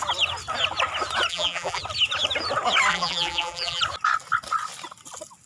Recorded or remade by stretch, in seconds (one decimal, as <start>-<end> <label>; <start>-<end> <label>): 0.0-1.3 recorded; 1.3-1.8 remade; 1.8-2.9 recorded; 2.9-3.8 remade; 3.8-5.5 recorded